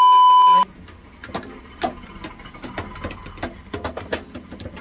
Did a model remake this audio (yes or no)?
no